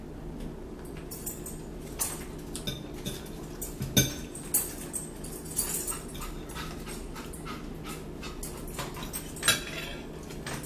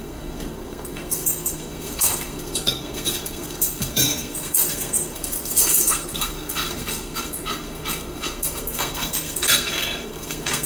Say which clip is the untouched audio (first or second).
first